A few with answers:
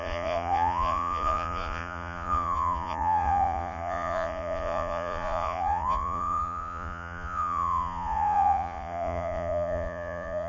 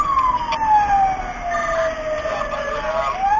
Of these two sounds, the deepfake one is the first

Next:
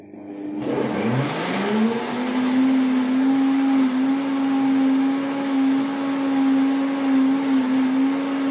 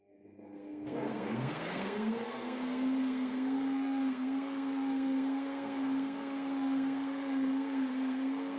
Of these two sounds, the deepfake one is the second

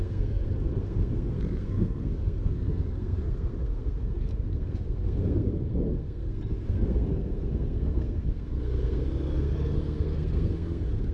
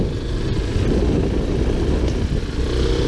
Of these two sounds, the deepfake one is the first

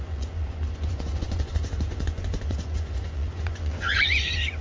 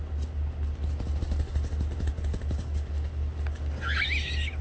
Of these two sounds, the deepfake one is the first